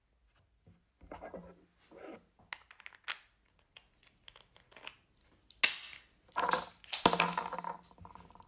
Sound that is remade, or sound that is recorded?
recorded